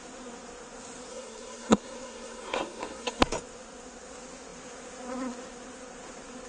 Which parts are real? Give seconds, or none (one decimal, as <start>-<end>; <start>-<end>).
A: 0.0-1.1; 3.2-6.5